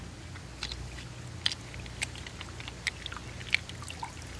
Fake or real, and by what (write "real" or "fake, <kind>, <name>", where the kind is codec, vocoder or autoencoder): real